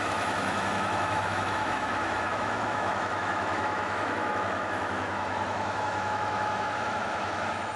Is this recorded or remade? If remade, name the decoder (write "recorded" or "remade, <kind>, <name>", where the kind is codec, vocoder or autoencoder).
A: remade, autoencoder, DAC-VAE